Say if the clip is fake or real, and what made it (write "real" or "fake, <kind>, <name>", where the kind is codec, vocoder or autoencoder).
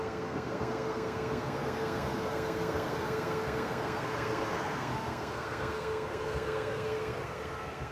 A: fake, codec, SNAC